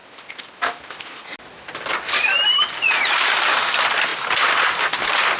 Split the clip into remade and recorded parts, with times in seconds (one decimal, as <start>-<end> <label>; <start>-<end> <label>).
0.0-5.4 recorded